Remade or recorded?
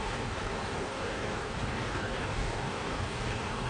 remade